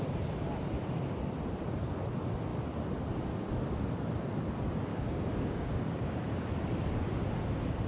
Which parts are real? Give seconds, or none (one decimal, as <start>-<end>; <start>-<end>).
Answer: 0.0-4.9; 6.2-7.9